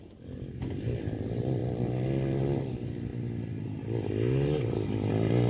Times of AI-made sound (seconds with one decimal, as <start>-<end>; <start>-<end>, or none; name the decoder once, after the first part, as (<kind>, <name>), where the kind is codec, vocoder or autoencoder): none